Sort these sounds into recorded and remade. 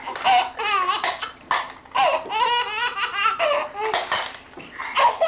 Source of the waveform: recorded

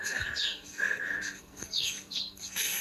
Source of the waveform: remade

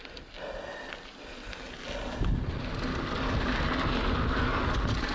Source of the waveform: recorded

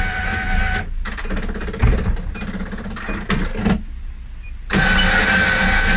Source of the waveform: recorded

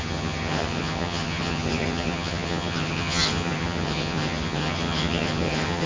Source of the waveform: remade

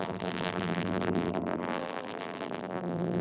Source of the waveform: remade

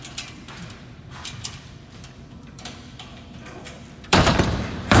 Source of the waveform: remade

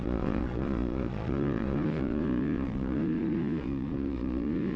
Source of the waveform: remade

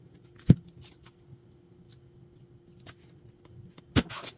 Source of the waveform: recorded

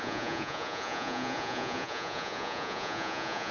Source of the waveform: remade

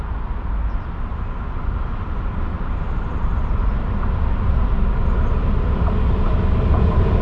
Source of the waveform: recorded